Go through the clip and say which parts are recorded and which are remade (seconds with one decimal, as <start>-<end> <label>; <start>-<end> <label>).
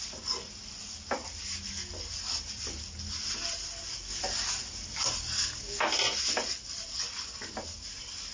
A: 0.0-8.3 recorded